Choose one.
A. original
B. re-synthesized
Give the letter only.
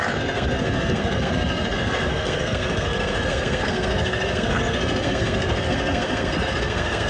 B